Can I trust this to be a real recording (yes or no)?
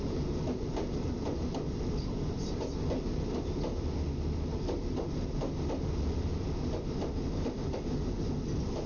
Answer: yes